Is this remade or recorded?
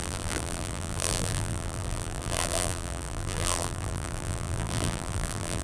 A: remade